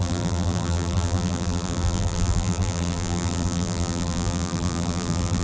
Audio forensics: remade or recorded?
remade